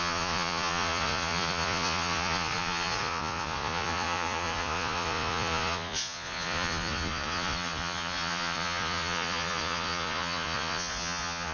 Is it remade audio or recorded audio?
remade